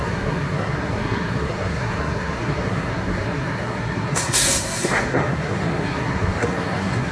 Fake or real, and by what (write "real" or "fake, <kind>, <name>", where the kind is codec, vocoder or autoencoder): fake, codec, SNAC